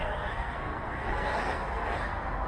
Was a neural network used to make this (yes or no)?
yes